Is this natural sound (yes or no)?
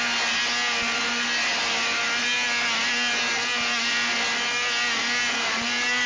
yes